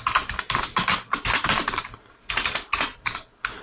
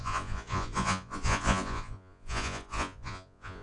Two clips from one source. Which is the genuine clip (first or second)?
first